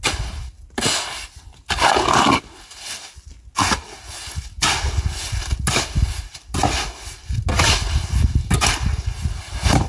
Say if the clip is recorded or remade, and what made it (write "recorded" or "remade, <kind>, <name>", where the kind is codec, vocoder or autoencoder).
recorded